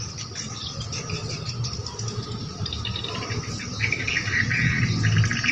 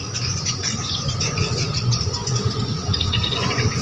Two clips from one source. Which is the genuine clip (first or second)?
first